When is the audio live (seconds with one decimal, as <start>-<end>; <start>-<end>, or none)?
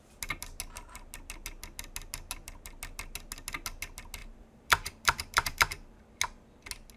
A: 0.0-4.2; 6.0-7.0